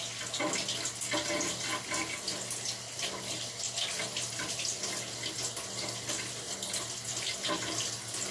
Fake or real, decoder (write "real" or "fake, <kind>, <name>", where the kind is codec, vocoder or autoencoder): real